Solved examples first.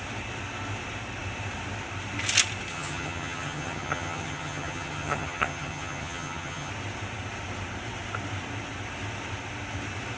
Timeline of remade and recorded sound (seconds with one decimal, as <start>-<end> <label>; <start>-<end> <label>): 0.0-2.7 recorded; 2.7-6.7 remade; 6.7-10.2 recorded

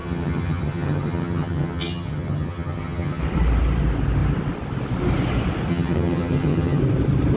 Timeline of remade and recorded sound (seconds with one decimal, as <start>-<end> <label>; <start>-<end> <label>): 0.0-3.2 remade; 3.2-5.7 recorded; 5.7-6.8 remade; 6.8-7.4 recorded

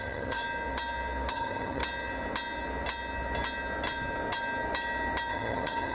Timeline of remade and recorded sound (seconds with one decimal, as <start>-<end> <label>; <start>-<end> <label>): 0.0-0.4 remade; 0.4-1.3 recorded; 1.3-1.8 remade; 1.8-5.3 recorded; 5.3-5.9 remade